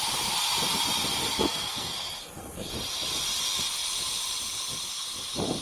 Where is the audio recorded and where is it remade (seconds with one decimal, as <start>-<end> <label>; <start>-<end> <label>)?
0.0-1.2 recorded; 1.2-2.7 remade; 2.7-5.6 recorded